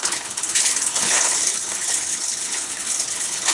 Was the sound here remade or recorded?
remade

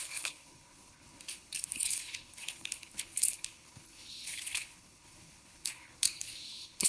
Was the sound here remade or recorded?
remade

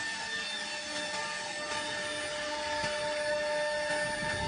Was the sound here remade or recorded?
recorded